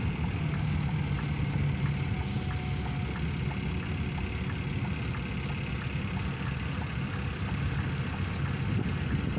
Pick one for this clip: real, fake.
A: real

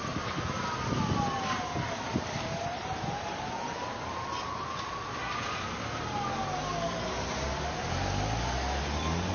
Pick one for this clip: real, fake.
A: real